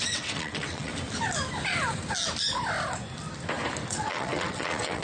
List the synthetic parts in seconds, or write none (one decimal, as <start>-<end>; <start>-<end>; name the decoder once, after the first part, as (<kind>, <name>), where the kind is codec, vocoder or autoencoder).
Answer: 0.0-0.9 (vocoder, WaveNeXt); 3.9-5.0